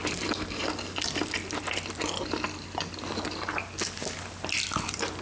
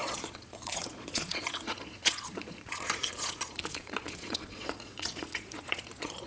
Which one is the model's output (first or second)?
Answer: second